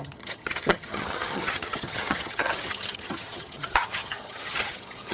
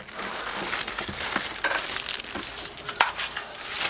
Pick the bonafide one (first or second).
second